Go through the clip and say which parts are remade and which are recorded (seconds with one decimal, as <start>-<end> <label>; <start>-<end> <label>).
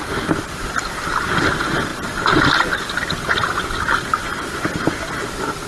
0.0-5.7 recorded